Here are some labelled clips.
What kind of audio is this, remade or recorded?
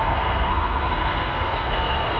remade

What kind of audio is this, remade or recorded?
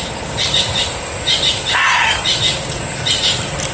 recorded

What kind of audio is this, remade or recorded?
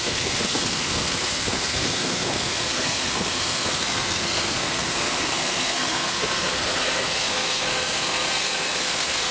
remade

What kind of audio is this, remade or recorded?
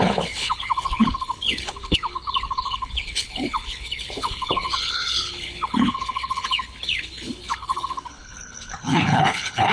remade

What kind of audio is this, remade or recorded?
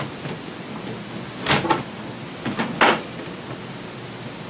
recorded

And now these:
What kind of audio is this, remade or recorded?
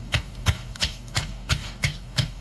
remade